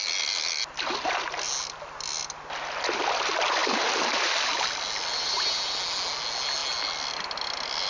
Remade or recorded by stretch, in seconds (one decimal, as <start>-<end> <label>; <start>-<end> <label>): 0.0-7.9 recorded